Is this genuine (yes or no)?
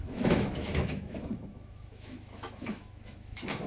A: no